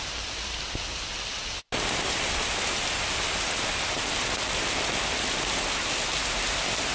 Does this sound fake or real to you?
real